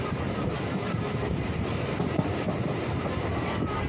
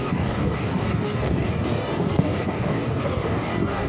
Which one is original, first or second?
first